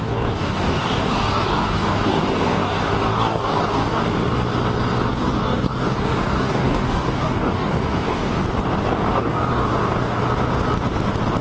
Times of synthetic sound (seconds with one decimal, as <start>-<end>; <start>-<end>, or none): 0.0-4.0; 5.1-8.3; 9.1-10.2